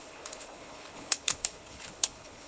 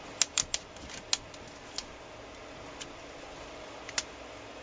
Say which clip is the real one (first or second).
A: second